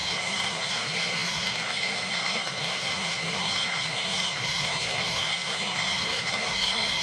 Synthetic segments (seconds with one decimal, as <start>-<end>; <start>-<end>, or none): 0.0-7.0